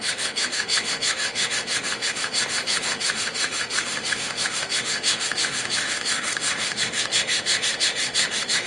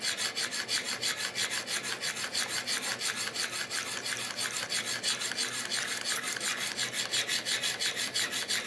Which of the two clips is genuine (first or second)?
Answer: second